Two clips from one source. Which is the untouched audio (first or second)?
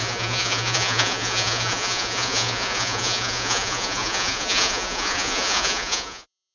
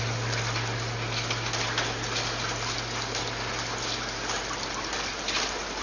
second